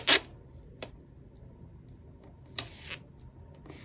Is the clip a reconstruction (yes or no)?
no